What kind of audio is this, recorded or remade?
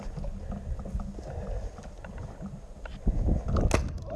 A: recorded